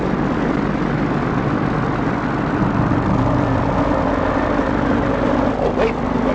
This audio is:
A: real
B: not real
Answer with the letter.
A